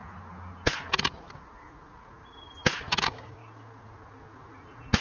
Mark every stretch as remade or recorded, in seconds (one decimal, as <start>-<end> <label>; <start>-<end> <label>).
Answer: 0.0-3.0 recorded; 3.0-3.4 remade; 3.4-5.0 recorded